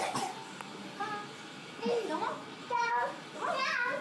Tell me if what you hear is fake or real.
real